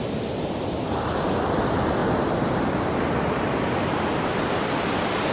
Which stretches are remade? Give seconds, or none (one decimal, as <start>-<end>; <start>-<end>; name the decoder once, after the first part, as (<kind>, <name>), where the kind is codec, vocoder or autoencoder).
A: none

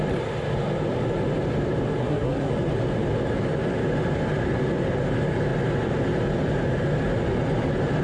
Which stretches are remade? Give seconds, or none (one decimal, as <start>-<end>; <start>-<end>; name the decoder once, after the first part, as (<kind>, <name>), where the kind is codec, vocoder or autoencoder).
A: 2.0-2.5 (codec, SNAC)

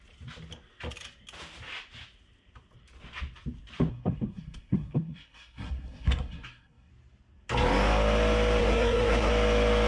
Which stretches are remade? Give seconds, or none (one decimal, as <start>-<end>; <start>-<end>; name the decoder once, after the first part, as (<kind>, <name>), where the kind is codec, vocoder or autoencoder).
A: 3.9-6.9 (codec, SNAC); 8.6-9.3